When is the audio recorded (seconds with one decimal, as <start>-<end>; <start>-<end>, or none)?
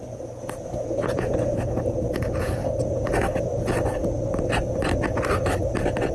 2.6-6.1